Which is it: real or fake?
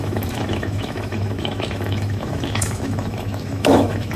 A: fake